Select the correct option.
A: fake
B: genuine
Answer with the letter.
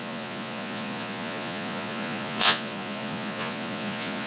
A